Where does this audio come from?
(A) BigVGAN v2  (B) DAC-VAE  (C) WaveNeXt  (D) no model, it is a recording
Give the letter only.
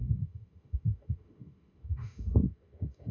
B